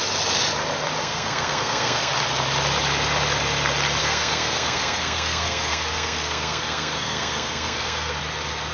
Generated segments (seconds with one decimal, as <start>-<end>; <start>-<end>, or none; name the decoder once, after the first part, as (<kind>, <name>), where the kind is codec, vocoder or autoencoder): 1.0-2.1 (codec, SNAC); 4.0-8.2